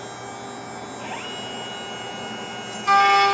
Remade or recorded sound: recorded